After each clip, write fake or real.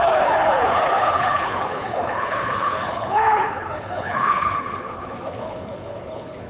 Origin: fake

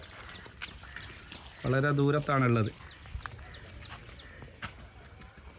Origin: real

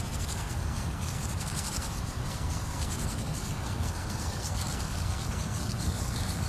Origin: fake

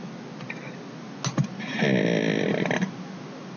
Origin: real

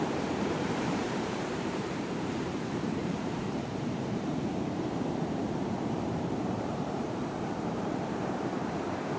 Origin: fake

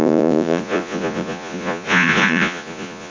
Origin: fake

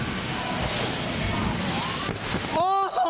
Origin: real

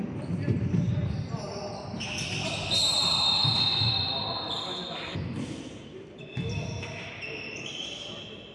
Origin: real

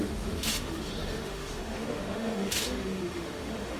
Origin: fake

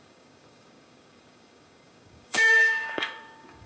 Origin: fake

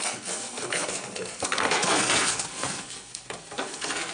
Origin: fake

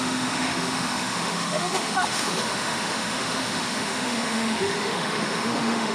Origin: fake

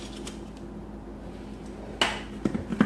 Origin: real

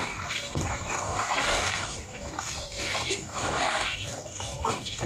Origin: fake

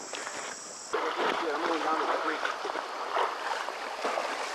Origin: real